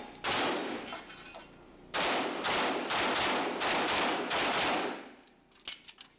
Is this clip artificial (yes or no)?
no